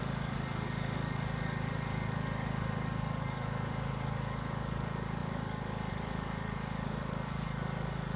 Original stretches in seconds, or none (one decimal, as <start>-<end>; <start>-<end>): none